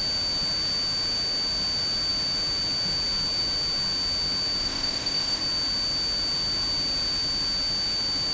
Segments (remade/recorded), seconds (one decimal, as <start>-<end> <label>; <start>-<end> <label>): 0.0-4.6 recorded; 4.6-5.4 remade; 5.4-8.3 recorded